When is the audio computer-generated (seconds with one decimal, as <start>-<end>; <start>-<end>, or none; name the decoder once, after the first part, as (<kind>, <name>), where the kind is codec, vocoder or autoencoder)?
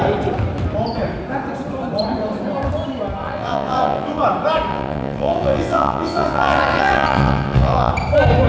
3.2-4.2 (vocoder, WaveNeXt); 4.7-7.9